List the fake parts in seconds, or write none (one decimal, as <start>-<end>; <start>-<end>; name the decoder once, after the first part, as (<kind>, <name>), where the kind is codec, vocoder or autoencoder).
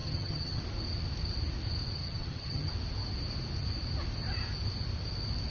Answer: 0.0-0.6 (vocoder, HiFi-GAN); 2.0-2.7